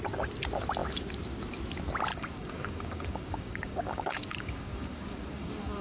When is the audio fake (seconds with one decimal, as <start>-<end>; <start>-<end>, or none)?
2.1-5.8